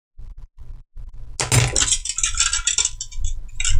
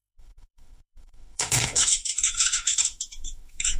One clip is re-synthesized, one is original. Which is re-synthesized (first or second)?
second